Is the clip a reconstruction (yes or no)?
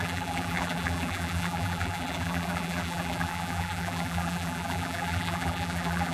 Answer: yes